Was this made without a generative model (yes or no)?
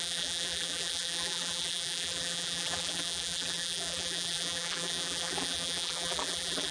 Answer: no